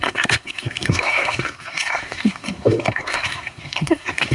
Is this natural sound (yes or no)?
no